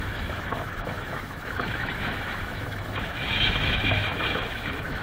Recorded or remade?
remade